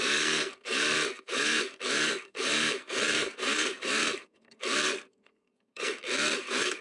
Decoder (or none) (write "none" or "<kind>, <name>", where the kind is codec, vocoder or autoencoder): codec, SNAC